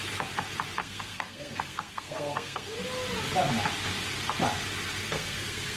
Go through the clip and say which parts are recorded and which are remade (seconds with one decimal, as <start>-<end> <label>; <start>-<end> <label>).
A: 0.0-0.8 recorded; 0.8-2.8 remade; 2.8-5.0 recorded; 5.0-5.8 remade